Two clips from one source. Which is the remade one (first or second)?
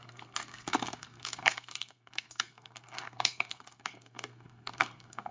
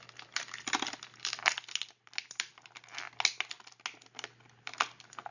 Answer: first